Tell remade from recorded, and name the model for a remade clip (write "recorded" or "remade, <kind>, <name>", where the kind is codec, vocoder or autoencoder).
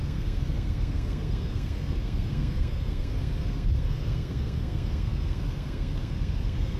remade, codec, SNAC